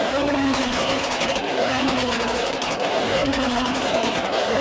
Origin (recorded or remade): remade